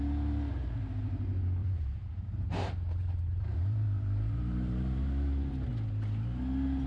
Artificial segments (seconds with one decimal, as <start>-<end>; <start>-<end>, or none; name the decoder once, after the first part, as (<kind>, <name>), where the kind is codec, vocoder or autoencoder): 1.6-5.7 (vocoder, BigVGAN v2)